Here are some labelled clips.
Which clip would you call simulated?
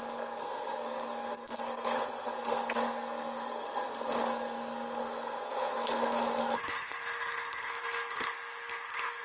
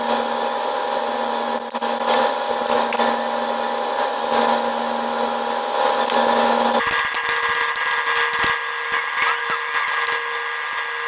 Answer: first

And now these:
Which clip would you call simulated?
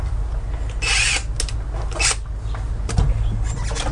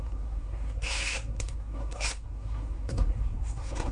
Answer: second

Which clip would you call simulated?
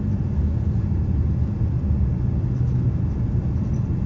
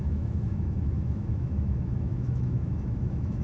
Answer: second